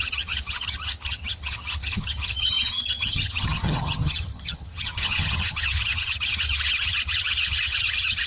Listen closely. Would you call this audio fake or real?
fake